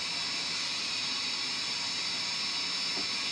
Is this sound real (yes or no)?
yes